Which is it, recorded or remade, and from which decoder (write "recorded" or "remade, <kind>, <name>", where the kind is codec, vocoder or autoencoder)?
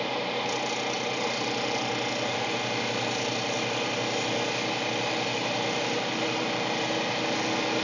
recorded